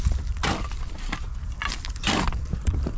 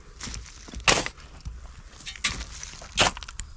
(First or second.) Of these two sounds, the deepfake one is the first